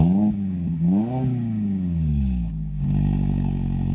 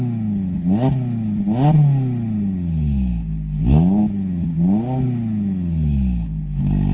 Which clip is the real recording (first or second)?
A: second